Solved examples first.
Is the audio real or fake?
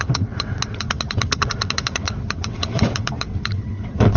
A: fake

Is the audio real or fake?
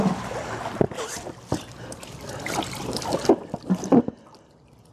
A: real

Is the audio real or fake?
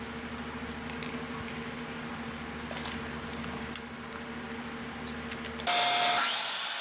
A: real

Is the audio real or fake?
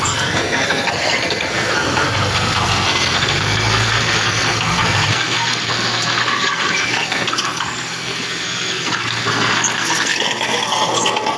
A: fake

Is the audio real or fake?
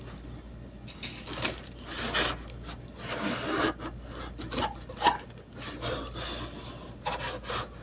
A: real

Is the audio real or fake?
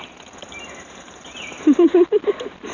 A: real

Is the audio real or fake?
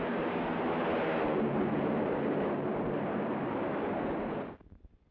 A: fake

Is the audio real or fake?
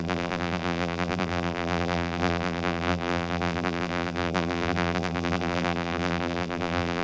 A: fake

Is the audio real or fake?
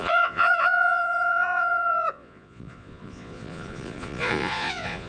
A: fake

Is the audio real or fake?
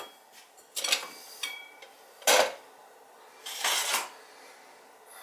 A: real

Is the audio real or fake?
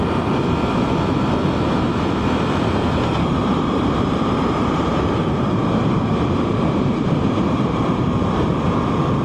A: fake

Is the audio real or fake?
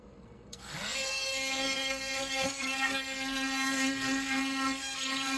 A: fake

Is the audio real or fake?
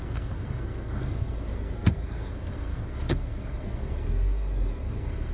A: fake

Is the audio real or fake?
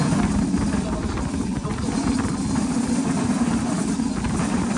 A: real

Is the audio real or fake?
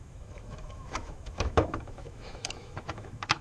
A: fake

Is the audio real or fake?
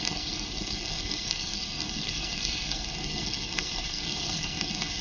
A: fake